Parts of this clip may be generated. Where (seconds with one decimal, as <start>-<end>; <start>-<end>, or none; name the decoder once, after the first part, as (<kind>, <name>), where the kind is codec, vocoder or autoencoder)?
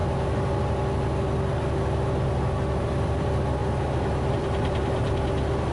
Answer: 2.8-3.6 (vocoder, BigVGAN v2); 4.3-5.7